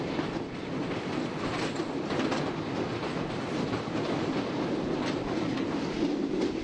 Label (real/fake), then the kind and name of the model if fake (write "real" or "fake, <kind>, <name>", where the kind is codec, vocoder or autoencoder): real